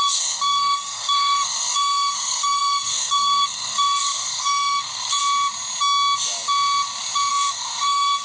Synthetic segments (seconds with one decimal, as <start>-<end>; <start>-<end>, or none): 0.0-5.2; 7.3-8.2